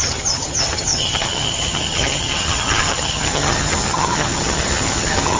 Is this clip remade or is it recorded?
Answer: remade